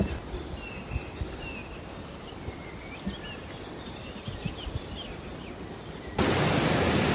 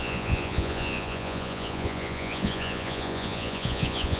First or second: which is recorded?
first